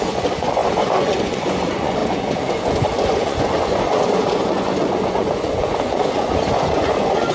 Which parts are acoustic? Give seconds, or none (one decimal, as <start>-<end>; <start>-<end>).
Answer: none